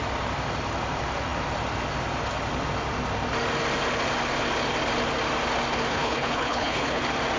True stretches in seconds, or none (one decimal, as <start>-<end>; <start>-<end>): 0.0-5.9; 7.0-7.4